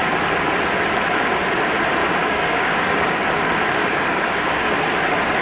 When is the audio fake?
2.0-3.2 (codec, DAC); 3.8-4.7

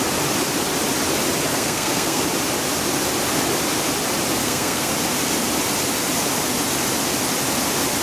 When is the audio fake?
1.5-2.2 (codec, SNAC); 4.4-4.9

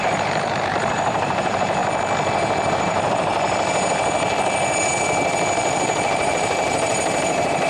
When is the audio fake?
0.0-1.8 (vocoder, BigVGAN v2); 2.7-3.3; 6.1-7.7